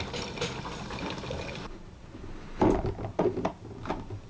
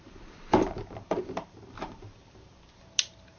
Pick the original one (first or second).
first